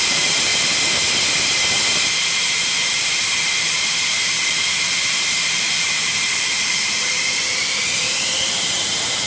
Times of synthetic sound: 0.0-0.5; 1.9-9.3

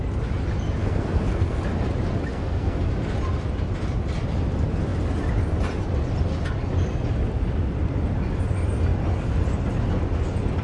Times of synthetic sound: 0.8-1.6; 2.3-2.9

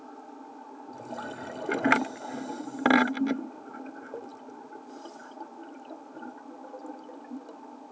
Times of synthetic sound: none

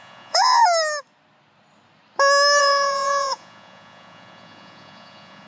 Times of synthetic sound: 0.0-0.6; 2.6-5.5

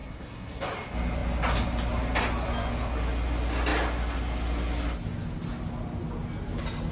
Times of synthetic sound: 0.0-0.6

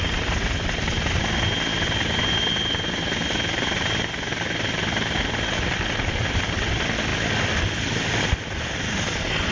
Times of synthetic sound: none

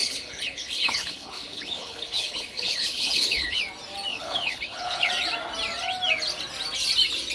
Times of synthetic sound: 0.0-3.6; 4.1-5.1

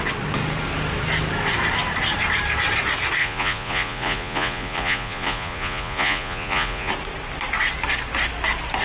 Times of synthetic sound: 3.2-6.9